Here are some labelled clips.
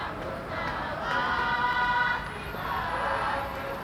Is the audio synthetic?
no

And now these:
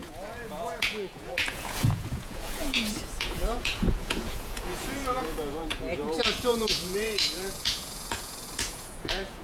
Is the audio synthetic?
yes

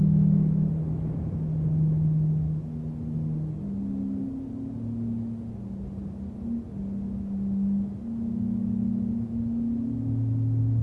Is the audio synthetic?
no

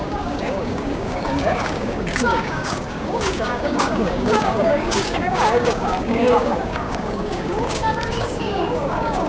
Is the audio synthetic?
yes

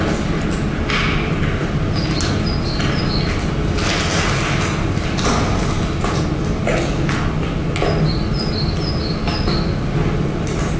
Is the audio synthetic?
no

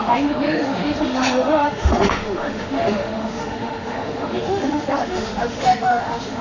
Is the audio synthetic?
yes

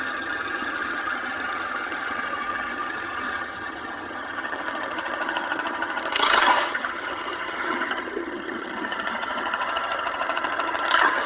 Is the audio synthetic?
yes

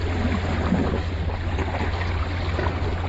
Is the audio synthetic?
no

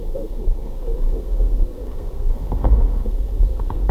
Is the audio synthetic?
yes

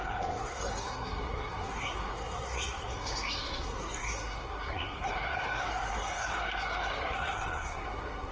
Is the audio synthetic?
yes